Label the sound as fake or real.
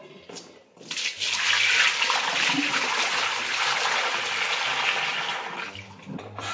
real